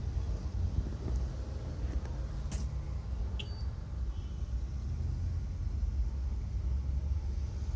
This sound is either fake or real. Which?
real